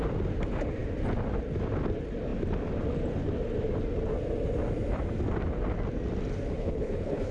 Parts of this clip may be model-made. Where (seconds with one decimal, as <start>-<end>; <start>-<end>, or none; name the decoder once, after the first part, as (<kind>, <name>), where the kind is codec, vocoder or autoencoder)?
6.6-7.3 (codec, HILCodec)